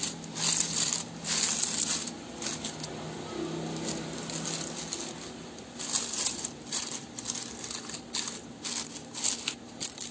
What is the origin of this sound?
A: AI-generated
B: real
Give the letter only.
B